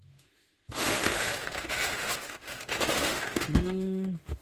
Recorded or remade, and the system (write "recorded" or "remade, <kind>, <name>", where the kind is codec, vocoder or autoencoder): remade, autoencoder, DAC-VAE